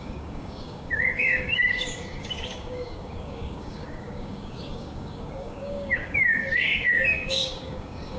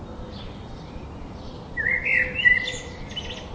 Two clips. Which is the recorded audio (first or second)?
second